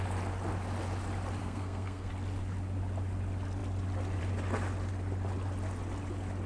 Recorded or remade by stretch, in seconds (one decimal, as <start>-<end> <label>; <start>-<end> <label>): 0.0-1.4 recorded; 1.4-2.1 remade; 2.1-6.5 recorded